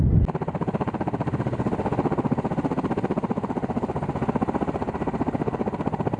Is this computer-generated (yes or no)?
no